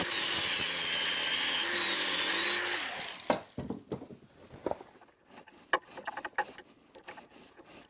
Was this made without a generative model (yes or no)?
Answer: yes